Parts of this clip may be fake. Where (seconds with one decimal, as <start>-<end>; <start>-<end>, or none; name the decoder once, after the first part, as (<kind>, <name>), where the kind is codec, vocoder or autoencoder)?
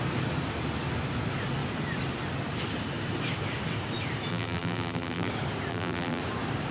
4.3-5.3 (vocoder, BigVGAN v2); 5.7-6.2